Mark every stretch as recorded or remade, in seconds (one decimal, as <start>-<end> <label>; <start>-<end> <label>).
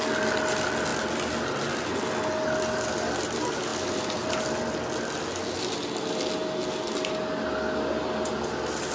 0.0-8.9 recorded